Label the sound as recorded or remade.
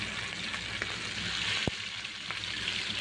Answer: recorded